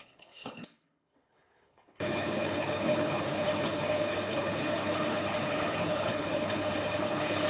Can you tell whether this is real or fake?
fake